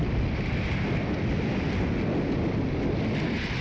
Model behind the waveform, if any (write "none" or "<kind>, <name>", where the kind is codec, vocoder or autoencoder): none